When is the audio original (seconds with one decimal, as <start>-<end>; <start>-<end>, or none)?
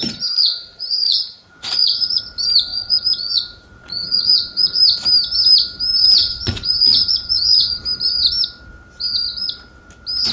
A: 0.0-0.4; 2.2-2.7; 4.8-6.2; 7.7-10.3